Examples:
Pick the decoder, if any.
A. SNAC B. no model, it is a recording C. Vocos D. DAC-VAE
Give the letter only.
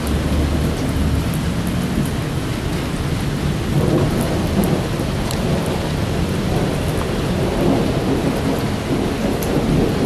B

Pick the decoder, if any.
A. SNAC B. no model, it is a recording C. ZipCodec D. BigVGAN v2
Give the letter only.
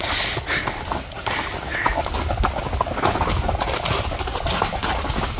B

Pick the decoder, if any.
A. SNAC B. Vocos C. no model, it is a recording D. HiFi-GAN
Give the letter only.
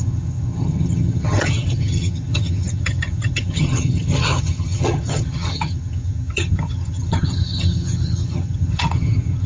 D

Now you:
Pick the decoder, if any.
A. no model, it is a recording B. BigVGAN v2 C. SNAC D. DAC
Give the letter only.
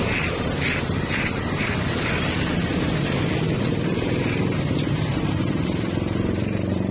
B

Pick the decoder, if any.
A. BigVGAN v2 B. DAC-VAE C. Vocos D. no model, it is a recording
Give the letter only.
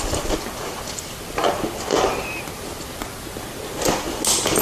D